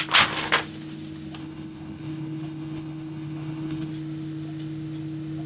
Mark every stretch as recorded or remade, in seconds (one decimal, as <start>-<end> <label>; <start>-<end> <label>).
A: 0.0-1.4 recorded; 1.4-3.9 remade; 3.9-5.5 recorded